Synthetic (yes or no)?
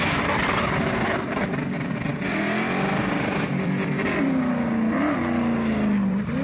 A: no